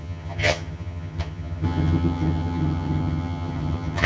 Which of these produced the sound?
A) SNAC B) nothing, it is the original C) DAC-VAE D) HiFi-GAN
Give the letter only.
D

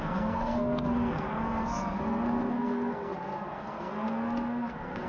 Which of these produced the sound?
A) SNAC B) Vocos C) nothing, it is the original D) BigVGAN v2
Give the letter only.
A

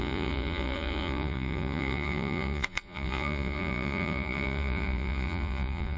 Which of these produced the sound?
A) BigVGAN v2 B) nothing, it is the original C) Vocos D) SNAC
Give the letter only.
C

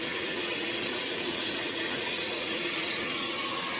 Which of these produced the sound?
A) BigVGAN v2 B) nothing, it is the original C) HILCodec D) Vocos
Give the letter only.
D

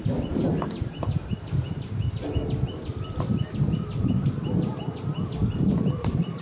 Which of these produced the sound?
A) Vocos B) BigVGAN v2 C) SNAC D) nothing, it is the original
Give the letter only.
D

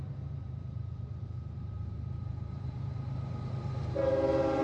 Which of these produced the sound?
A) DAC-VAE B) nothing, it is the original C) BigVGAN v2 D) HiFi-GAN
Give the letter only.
C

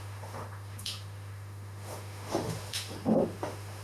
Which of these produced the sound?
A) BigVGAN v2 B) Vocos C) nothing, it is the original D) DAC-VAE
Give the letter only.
D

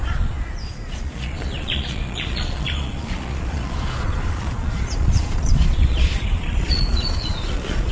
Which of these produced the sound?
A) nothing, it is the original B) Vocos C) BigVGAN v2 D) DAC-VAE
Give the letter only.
B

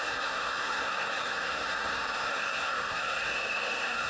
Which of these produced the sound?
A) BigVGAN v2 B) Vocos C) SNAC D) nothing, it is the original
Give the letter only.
C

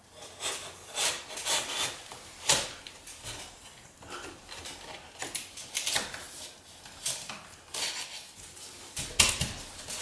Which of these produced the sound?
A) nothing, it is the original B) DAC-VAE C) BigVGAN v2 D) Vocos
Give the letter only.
A